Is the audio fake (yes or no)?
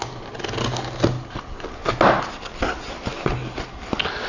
no